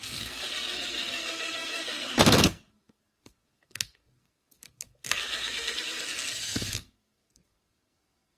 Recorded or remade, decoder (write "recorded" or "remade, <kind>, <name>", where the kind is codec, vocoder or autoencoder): remade, codec, SNAC